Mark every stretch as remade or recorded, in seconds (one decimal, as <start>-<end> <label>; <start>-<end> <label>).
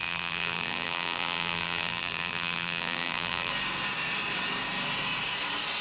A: 0.0-3.5 remade; 3.5-5.8 recorded